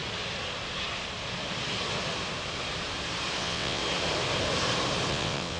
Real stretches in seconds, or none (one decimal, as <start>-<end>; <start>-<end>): 0.0-3.4; 3.8-5.1